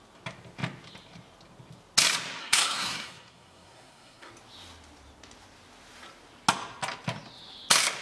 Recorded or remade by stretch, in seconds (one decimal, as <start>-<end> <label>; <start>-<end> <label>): 0.0-2.4 recorded; 2.4-4.3 remade; 4.3-8.0 recorded